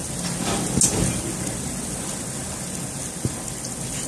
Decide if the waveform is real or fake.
real